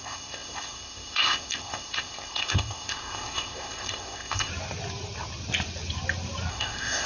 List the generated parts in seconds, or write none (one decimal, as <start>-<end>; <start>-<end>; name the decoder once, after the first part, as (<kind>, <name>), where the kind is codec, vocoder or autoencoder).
0.0-4.5 (codec, ZipCodec); 6.5-7.1